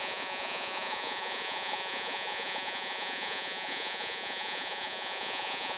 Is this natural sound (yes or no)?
no